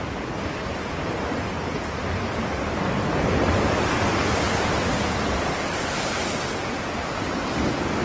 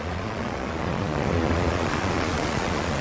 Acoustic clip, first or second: first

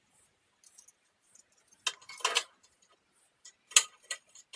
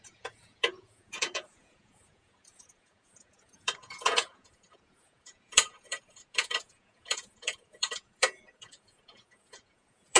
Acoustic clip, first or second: first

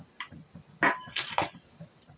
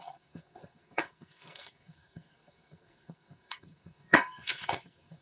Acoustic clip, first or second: first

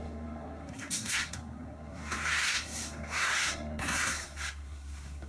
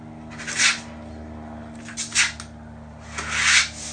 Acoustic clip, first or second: second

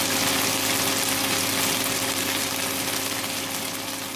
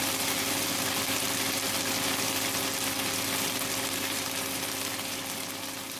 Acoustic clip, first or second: first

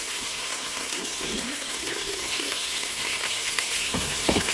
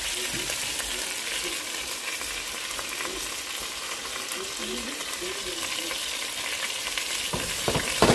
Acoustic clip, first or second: second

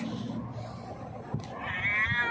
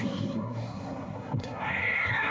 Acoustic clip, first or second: first